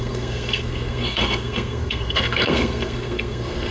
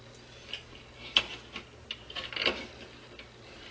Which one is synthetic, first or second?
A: first